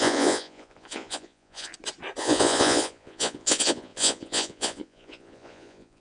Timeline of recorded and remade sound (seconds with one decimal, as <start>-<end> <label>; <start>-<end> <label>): 0.0-1.7 remade; 1.7-2.2 recorded; 2.2-6.0 remade